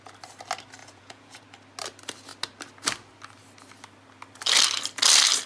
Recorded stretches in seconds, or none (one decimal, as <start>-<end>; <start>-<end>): 0.0-0.8; 1.4-5.5